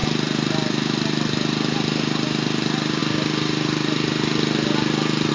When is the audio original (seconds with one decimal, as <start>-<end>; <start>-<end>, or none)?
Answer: 0.0-5.3